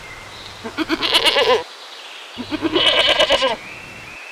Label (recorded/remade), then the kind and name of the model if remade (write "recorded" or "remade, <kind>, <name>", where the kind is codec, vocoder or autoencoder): recorded